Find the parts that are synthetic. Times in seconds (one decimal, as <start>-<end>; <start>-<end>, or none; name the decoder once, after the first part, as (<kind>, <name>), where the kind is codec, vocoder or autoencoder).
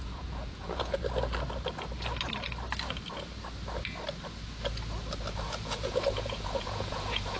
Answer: 0.0-1.0 (vocoder, Vocos); 5.4-7.4